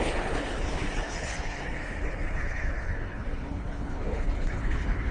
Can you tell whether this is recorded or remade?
remade